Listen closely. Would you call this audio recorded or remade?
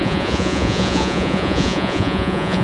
remade